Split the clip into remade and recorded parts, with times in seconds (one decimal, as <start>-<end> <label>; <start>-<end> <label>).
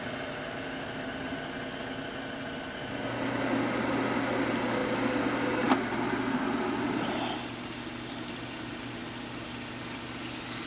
0.0-10.7 recorded